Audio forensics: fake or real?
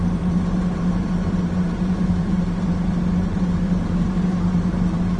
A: fake